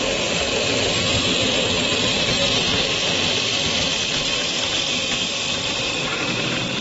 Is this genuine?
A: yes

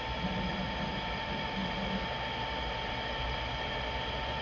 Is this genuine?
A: yes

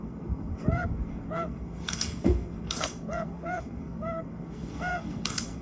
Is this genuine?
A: no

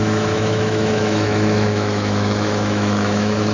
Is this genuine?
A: no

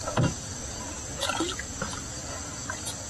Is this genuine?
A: yes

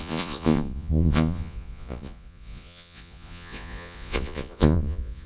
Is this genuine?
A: no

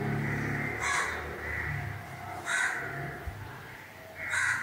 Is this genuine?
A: yes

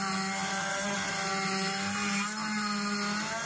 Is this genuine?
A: yes